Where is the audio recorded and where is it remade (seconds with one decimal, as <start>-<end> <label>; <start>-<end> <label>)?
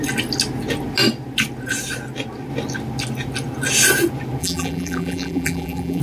0.0-4.4 recorded; 4.4-6.0 remade